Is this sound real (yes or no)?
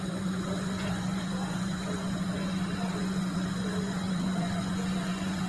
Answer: no